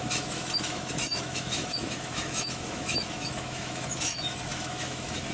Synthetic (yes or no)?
yes